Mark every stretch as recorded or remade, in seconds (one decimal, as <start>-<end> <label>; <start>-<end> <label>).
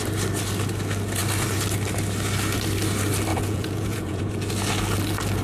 0.0-3.3 recorded; 3.3-4.2 remade; 4.2-5.4 recorded